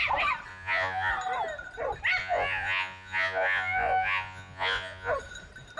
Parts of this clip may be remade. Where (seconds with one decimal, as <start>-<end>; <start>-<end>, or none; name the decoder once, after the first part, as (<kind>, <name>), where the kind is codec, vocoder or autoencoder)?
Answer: 0.5-1.1 (vocoder, Vocos); 2.2-5.1